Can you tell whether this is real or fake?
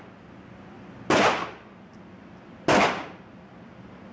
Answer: real